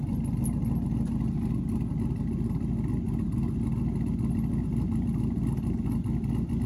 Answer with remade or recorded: recorded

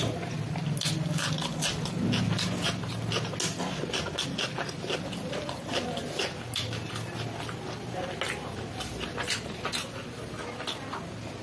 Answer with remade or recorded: recorded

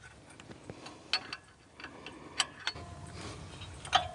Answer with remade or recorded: recorded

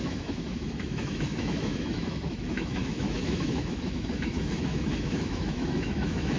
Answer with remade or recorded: remade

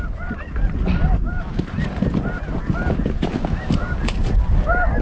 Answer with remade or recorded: recorded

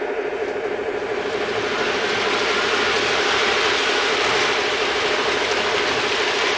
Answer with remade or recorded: recorded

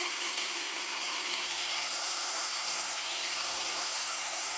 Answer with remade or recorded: remade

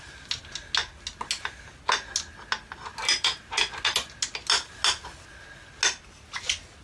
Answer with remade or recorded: recorded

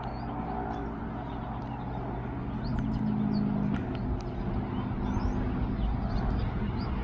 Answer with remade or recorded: recorded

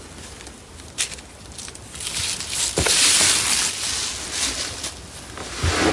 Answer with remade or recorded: recorded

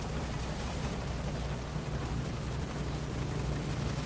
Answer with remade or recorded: recorded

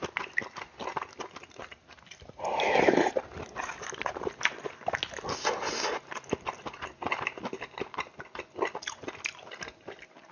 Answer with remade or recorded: recorded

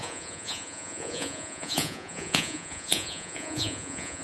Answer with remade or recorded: remade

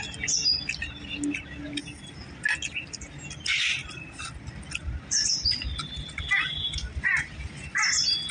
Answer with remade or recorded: recorded